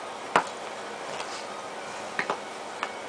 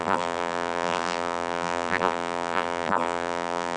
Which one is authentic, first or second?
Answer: first